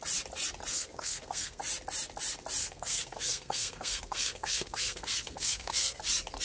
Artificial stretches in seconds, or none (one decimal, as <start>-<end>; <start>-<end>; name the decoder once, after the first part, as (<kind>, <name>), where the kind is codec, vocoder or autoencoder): 0.7-1.6 (codec, SNAC); 2.6-6.0